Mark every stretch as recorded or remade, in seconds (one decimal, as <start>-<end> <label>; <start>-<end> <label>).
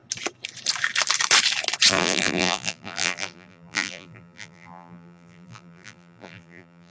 0.0-1.9 recorded; 1.9-6.9 remade